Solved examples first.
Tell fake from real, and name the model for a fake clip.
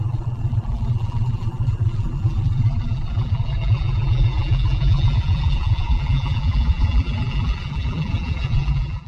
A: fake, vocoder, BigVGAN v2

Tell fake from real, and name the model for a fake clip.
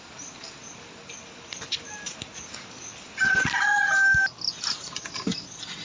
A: real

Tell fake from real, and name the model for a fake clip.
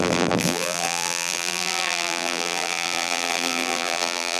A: fake, vocoder, BigVGAN v2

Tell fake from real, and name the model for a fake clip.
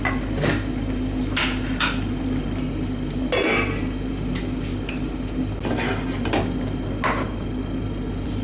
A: real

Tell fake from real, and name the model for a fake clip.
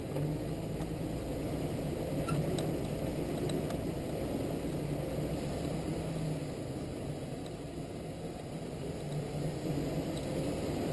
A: real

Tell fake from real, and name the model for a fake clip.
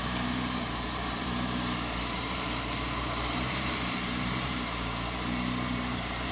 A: fake, vocoder, BigVGAN v2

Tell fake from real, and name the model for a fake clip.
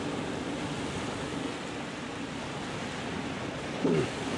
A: real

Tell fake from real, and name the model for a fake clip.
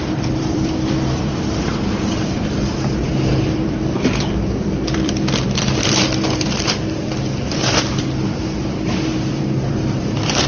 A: fake, vocoder, BigVGAN v2